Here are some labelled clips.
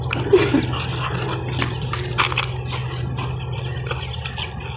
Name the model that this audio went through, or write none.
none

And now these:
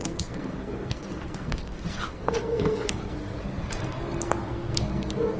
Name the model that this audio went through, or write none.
codec, SNAC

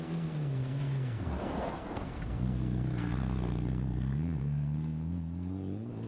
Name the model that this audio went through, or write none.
codec, SNAC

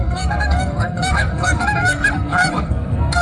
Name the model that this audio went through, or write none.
codec, SNAC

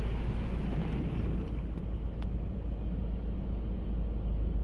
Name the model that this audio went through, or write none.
none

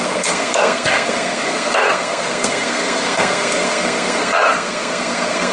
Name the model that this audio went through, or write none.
codec, SNAC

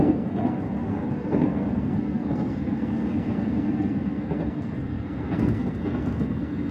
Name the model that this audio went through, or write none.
codec, SNAC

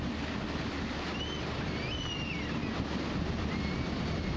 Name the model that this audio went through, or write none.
none